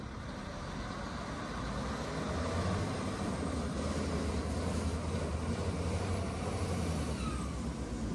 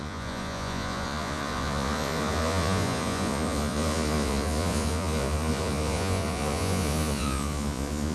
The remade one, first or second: second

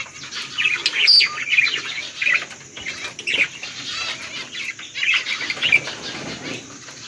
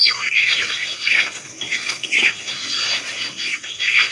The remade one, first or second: second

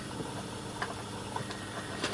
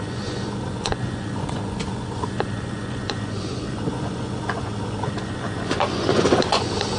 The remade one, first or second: second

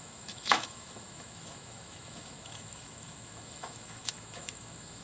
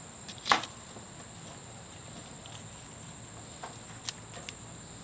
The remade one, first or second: first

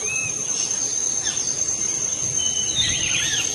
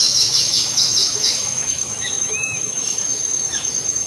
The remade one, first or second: second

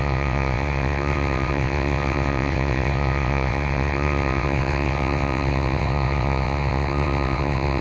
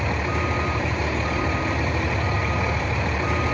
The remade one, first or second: first